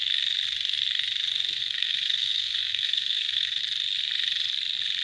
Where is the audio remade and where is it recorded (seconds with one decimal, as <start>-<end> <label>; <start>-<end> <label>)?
0.0-1.6 recorded; 1.6-3.6 remade; 3.6-5.0 recorded